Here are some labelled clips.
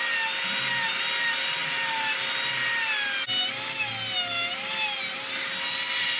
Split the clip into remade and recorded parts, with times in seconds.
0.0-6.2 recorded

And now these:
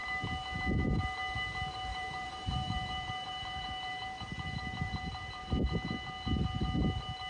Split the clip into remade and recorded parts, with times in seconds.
0.0-1.9 recorded; 1.9-5.4 remade; 5.4-7.3 recorded

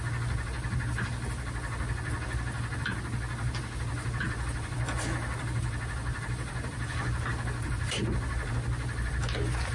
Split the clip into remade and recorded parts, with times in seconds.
0.0-3.9 recorded; 3.9-7.0 remade; 7.0-9.7 recorded

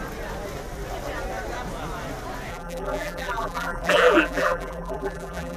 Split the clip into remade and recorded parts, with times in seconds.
0.0-2.5 recorded; 2.5-5.6 remade

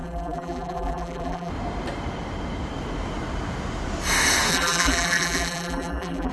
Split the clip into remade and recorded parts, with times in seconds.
0.0-1.5 remade; 1.5-4.5 recorded; 4.5-6.3 remade

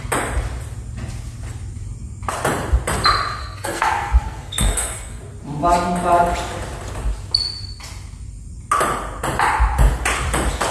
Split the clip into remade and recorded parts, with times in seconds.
0.0-3.4 recorded; 3.4-5.2 remade; 5.2-10.7 recorded

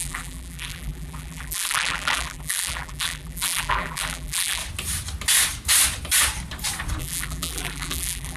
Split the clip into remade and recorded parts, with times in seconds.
0.0-4.6 remade; 4.6-7.0 recorded; 7.0-8.4 remade